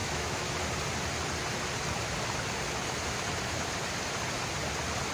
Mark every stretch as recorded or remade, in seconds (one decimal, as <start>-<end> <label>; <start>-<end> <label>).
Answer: 0.0-0.6 remade; 0.6-5.1 recorded